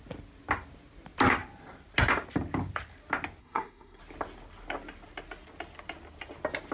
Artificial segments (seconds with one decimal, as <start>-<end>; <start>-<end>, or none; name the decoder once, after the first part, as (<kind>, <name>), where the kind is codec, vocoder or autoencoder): 3.4-4.0 (codec, SNAC)